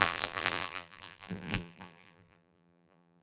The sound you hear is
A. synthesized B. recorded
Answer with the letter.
A